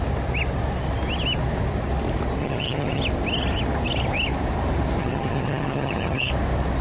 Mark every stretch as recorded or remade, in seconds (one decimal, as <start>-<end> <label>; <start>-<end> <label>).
0.0-2.4 recorded; 2.4-3.0 remade; 3.0-5.0 recorded; 5.0-6.3 remade; 6.3-6.8 recorded

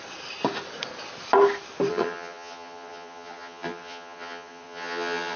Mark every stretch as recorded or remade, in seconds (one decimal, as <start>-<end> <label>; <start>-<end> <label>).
0.0-1.9 recorded; 1.9-5.4 remade

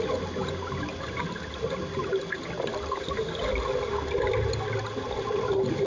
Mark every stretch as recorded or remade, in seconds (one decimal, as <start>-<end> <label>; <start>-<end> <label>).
0.0-5.9 recorded

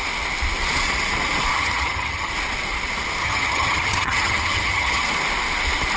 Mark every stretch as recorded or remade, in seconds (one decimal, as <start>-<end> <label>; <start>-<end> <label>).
0.0-1.5 recorded; 1.5-2.3 remade; 2.3-3.2 recorded; 3.2-5.0 remade; 5.0-6.0 recorded

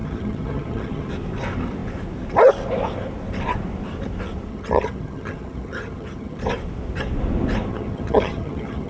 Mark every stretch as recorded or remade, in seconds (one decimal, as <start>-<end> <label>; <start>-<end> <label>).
0.0-1.1 remade; 1.1-4.5 recorded; 4.5-6.4 remade; 6.4-7.7 recorded; 7.7-8.9 remade